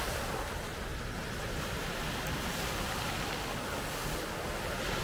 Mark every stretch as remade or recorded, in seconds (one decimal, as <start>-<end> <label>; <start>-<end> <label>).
0.0-5.0 recorded